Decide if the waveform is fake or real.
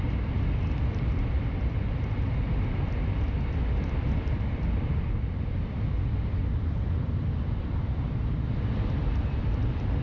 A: fake